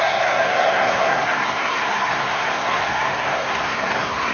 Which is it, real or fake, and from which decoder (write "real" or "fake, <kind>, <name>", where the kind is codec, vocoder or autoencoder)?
fake, codec, SNAC